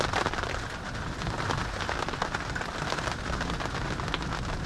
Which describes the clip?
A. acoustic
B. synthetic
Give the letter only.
A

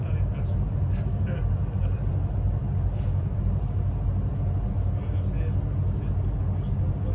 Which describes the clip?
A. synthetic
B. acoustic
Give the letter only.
B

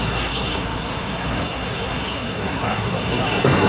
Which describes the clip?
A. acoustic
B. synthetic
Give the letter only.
B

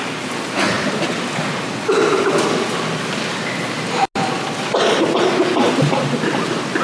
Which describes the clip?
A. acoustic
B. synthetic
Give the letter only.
A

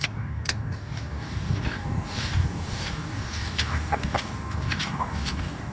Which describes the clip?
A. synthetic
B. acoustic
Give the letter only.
A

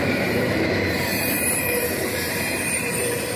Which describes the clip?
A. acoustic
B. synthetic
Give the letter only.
B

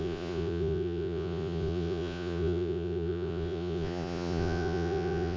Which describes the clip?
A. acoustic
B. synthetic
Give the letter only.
B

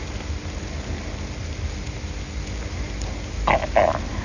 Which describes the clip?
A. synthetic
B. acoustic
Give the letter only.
B